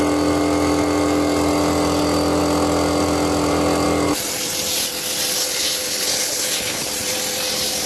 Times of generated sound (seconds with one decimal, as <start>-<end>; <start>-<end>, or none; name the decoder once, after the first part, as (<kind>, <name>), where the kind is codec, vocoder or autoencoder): 5.4-6.9 (codec, HILCodec)